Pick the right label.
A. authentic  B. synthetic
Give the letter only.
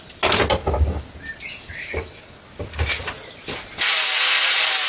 A